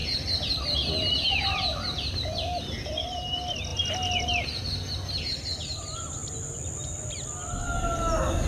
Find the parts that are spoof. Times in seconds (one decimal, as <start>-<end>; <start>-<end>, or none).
0.0-0.5; 3.7-4.3